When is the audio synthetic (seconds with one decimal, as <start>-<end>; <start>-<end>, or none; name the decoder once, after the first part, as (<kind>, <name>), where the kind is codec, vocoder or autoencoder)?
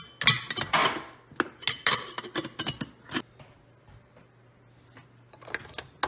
none